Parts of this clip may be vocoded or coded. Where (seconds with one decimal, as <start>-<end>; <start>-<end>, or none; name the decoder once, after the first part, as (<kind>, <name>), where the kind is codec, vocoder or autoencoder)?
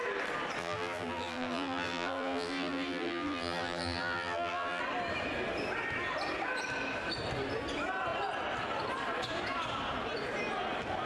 0.6-4.8 (vocoder, BigVGAN v2)